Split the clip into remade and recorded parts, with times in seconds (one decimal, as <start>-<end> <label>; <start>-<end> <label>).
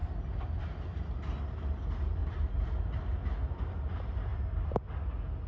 0.0-5.5 recorded